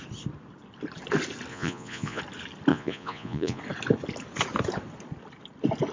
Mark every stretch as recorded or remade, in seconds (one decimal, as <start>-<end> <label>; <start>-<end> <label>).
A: 0.0-1.5 recorded; 1.5-2.2 remade; 2.2-2.7 recorded; 2.7-3.6 remade; 3.6-5.9 recorded